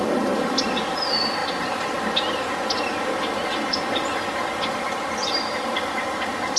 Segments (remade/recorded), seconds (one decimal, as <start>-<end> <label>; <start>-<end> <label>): 0.0-6.6 recorded